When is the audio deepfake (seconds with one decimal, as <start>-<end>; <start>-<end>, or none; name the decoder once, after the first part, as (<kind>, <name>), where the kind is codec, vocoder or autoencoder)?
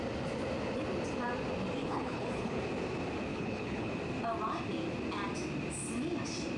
1.8-2.6 (codec, HILCodec); 3.3-3.9